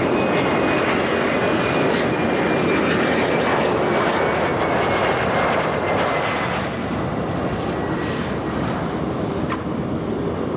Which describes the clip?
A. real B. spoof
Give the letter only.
A